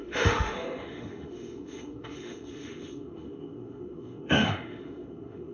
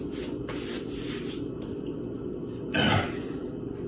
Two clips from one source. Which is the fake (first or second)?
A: first